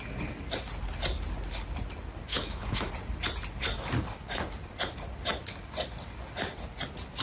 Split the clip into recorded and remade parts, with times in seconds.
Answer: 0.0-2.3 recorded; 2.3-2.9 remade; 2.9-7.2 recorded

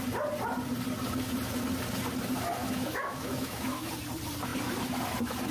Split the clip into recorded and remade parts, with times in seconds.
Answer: 0.0-2.6 recorded; 2.6-3.9 remade; 3.9-5.5 recorded

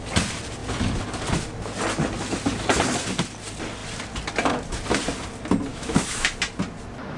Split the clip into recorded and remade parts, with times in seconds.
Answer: 0.0-5.7 recorded; 5.7-6.3 remade; 6.3-7.2 recorded

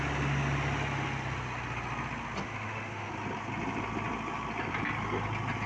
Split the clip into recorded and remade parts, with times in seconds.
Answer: 0.0-2.4 recorded; 2.4-3.1 remade; 3.1-5.7 recorded

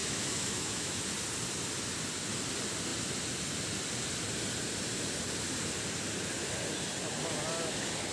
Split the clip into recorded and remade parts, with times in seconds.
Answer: 0.0-1.0 remade; 1.0-8.1 recorded

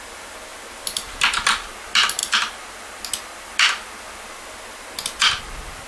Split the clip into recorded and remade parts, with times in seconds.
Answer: 0.0-5.9 recorded

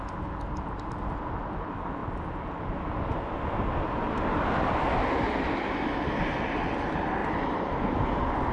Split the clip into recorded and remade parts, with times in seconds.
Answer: 0.0-8.5 recorded